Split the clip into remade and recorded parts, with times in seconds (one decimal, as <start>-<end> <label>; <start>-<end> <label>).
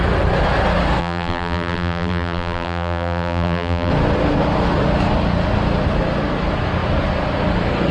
0.0-1.0 recorded; 1.0-3.9 remade; 3.9-7.9 recorded